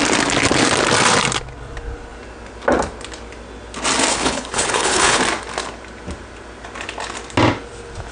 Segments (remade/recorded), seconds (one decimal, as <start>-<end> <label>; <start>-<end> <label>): 0.0-4.1 recorded; 4.1-5.2 remade; 5.2-8.1 recorded